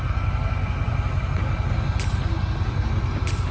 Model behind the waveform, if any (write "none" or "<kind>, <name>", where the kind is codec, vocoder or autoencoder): none